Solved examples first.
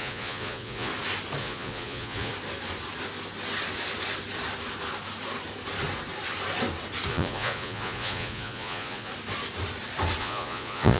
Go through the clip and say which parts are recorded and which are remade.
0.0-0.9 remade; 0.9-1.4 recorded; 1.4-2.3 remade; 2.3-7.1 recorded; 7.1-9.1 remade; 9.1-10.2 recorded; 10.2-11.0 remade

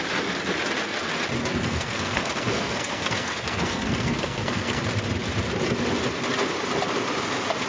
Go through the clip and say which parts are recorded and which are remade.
0.0-1.5 recorded; 1.5-4.8 remade; 4.8-7.7 recorded

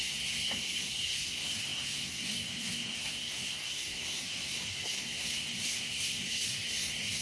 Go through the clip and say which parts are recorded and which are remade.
0.0-7.2 remade

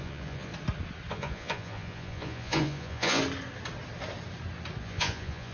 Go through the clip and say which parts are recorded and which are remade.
0.0-0.5 remade; 0.5-1.1 recorded; 1.1-3.2 remade; 3.2-4.8 recorded; 4.8-5.5 remade